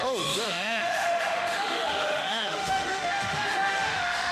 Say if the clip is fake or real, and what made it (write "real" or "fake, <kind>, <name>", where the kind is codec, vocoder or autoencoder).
fake, autoencoder, DAC-VAE